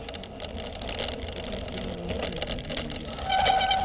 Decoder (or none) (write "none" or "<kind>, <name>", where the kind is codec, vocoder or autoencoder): none